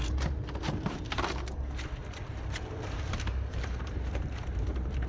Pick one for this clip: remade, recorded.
remade